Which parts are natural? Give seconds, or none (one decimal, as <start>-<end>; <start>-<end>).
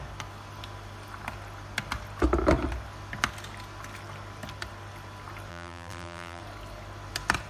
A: 0.0-5.5; 6.4-7.5